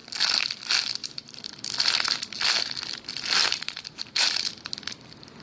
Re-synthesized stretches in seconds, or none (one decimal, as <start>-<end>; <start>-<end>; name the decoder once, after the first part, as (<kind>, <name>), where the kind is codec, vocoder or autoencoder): 1.0-1.5 (vocoder, BigVGAN v2); 3.4-4.5